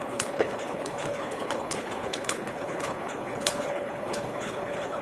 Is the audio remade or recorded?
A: remade